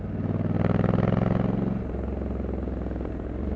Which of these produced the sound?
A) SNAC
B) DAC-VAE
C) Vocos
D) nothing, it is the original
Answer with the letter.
D